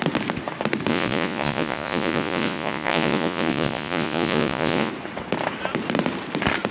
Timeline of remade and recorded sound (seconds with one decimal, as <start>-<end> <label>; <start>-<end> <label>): 0.0-0.9 recorded; 0.9-4.9 remade; 4.9-6.7 recorded